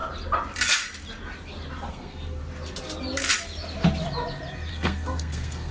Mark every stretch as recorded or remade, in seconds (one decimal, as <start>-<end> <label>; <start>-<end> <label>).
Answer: 0.0-1.9 recorded; 1.9-2.4 remade; 2.4-4.7 recorded; 4.7-5.7 remade